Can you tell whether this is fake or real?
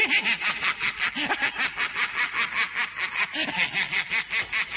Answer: real